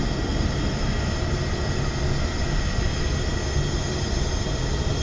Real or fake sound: real